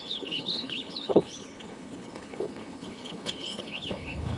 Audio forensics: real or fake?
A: fake